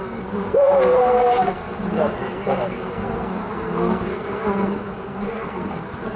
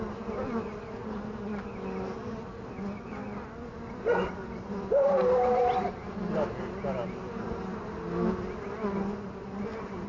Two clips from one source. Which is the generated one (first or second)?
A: first